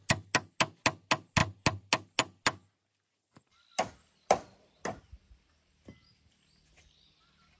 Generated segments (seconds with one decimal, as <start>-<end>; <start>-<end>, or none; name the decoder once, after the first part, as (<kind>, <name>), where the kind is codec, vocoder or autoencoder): none